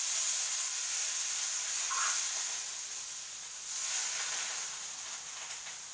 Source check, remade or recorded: recorded